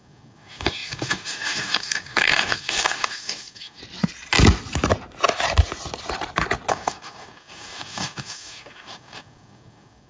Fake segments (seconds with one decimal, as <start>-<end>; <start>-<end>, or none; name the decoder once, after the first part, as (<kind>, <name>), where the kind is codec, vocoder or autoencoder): 0.0-3.8 (codec, DAC); 6.7-10.1